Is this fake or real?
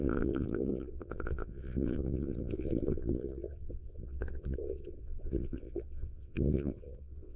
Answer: fake